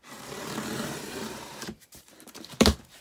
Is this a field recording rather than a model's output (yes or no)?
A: no